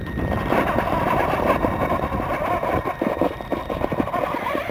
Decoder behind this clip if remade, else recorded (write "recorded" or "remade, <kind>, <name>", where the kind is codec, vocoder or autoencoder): remade, vocoder, BigVGAN v2